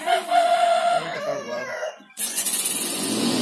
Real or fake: fake